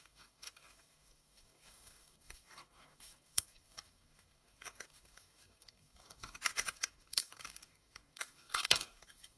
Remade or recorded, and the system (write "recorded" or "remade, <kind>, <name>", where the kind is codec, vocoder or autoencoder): remade, codec, DAC